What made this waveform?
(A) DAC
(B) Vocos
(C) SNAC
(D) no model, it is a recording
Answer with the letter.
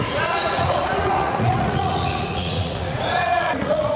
B